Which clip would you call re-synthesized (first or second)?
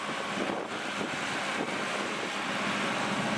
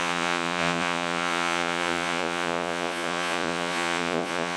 second